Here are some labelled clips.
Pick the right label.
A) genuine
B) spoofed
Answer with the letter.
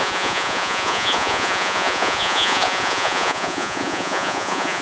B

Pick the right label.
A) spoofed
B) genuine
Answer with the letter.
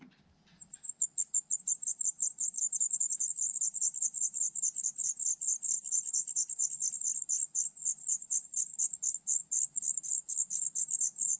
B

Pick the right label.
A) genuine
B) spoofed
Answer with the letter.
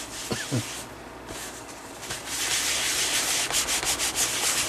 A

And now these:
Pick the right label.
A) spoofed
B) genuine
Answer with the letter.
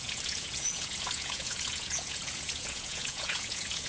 A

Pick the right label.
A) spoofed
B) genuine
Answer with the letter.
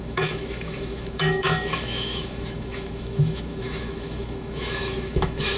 A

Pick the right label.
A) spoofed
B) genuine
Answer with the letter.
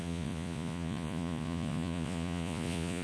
A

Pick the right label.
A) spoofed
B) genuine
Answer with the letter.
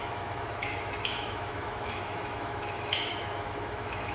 A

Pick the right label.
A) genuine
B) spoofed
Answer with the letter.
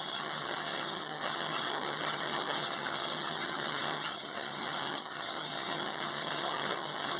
B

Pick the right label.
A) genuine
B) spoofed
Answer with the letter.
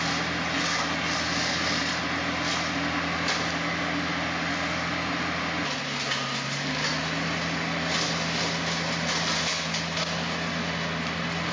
A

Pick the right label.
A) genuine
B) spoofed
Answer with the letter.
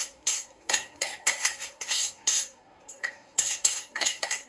B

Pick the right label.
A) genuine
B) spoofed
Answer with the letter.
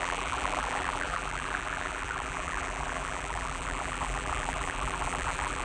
B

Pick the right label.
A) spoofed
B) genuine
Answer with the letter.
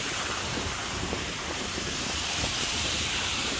A